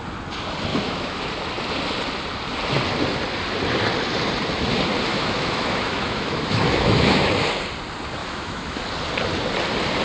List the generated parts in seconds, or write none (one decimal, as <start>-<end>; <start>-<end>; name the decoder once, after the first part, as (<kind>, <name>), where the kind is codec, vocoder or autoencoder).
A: 0.7-1.3 (autoencoder, DAC-VAE); 5.1-7.3; 8.2-8.8